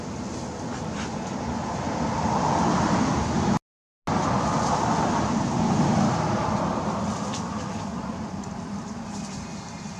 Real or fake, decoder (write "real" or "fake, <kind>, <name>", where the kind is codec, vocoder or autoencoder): real